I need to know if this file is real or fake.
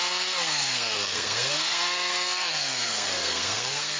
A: fake